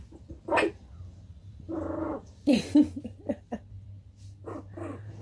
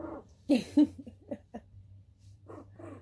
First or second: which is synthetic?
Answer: second